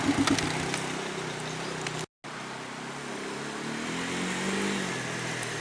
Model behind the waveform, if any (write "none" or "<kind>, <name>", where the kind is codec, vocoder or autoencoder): none